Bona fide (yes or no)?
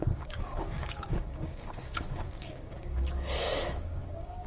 no